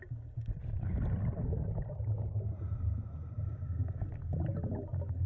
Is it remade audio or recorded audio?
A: recorded